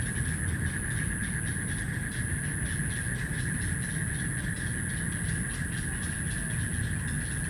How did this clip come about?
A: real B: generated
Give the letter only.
A